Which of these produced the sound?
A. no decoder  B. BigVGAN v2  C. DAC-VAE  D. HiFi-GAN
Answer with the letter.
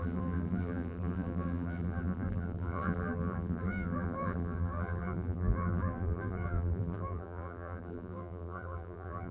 B